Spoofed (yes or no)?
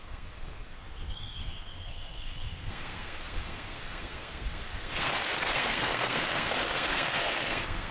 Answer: yes